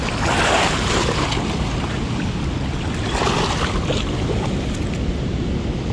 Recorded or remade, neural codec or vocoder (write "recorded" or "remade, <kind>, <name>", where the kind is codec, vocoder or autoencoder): recorded